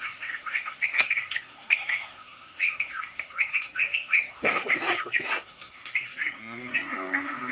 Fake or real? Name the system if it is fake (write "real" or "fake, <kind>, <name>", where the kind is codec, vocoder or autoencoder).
fake, codec, SNAC